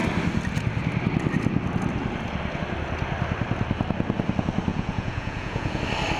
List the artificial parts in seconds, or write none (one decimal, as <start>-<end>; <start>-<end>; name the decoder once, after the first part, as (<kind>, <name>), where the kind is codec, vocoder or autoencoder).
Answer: 4.7-5.8 (vocoder, Vocos)